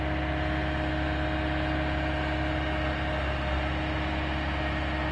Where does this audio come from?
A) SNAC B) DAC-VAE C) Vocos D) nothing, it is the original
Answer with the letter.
D